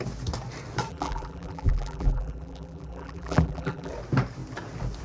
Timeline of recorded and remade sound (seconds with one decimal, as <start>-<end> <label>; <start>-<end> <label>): 0.0-0.9 recorded; 0.9-3.9 remade; 3.9-5.0 recorded